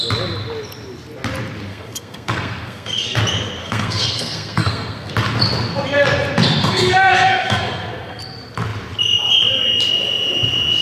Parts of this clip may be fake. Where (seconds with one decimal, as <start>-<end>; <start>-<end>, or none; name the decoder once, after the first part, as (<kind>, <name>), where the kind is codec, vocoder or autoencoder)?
1.7-3.2 (codec, SNAC); 3.6-5.1; 6.6-8.2